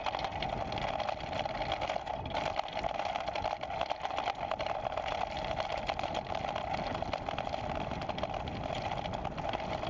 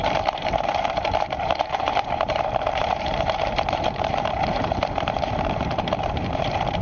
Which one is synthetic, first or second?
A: second